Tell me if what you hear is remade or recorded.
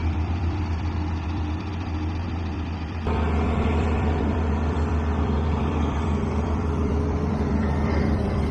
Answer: remade